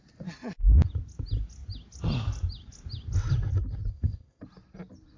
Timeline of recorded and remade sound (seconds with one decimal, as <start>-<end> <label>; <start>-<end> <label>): 0.0-3.9 recorded; 3.9-4.4 remade; 4.4-5.2 recorded